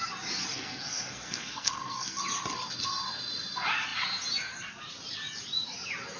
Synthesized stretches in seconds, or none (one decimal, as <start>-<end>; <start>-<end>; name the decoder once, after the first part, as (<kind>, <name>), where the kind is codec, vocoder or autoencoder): 0.5-2.2 (codec, SNAC)